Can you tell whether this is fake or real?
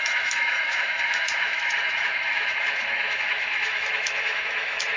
fake